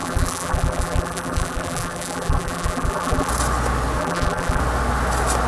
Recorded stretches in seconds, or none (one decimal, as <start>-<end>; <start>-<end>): 3.3-4.0; 4.6-5.5